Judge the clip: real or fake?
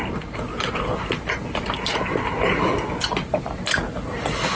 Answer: real